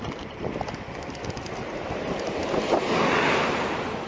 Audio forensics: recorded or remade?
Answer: recorded